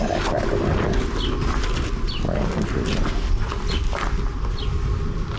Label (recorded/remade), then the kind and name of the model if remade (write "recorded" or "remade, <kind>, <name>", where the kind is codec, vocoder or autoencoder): recorded